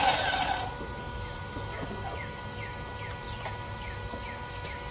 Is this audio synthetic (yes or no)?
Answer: no